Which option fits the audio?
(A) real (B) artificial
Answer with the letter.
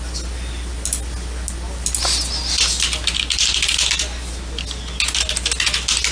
A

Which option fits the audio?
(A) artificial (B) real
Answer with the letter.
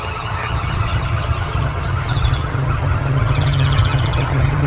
A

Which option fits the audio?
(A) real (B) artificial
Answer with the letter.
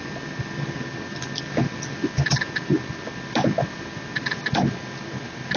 A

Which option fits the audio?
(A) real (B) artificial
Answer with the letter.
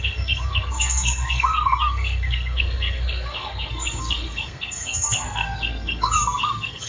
B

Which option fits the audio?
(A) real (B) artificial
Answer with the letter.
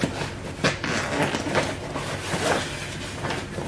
A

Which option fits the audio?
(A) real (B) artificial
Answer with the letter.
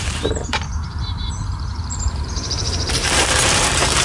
B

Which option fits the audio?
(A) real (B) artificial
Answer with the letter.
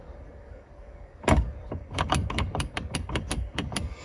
B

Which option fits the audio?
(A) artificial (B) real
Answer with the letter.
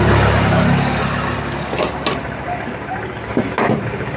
B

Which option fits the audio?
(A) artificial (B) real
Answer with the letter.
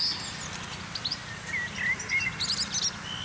B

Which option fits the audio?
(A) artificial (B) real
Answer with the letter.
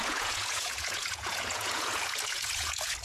A